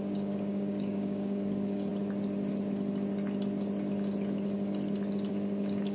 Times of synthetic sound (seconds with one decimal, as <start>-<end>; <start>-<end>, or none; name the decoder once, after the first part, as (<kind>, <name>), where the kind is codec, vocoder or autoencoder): 0.0-1.9 (codec, DAC); 5.3-5.9